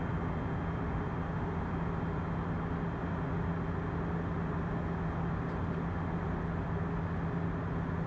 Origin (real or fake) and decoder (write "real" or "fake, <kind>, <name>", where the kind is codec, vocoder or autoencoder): real